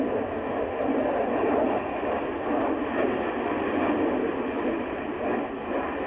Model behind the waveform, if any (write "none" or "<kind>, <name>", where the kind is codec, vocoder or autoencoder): none